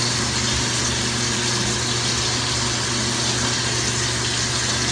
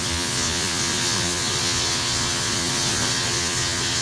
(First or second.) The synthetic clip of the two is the second